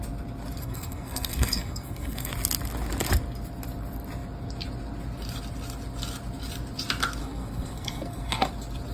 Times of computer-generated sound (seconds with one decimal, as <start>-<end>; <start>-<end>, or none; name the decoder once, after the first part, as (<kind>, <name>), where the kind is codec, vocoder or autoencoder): 0.6-2.3 (codec, SNAC); 7.2-8.5